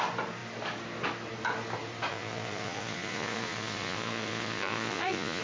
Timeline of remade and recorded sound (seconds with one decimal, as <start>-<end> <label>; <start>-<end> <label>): 0.0-2.1 recorded; 2.1-5.4 remade